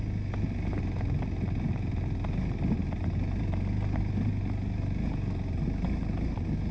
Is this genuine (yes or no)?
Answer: yes